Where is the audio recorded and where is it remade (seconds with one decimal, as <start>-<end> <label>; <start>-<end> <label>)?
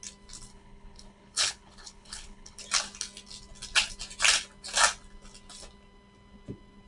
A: 0.0-0.5 recorded; 0.5-2.6 remade; 2.6-6.9 recorded